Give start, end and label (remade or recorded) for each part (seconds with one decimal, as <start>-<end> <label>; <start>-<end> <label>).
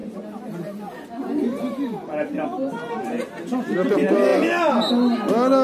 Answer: 0.0-5.6 recorded